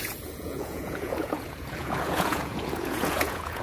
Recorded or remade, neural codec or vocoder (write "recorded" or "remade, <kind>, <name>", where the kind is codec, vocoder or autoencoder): remade, vocoder, Vocos